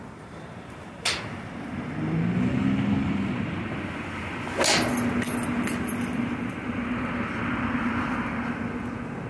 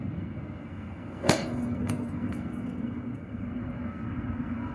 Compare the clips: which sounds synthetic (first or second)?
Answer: second